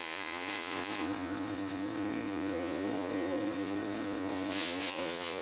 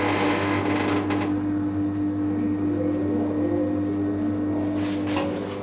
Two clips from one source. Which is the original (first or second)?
second